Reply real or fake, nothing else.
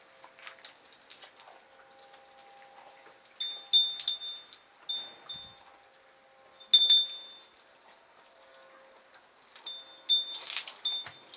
real